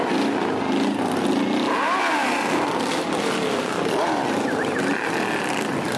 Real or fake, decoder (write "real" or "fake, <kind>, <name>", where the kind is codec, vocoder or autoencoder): real